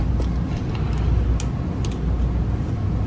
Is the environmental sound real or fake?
real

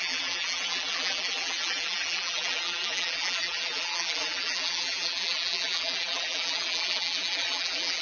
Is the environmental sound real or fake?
fake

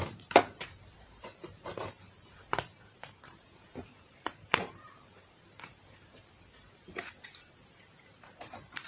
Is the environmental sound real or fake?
fake